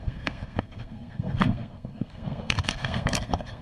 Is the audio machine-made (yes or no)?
yes